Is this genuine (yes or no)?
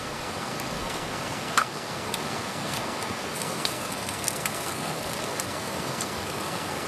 no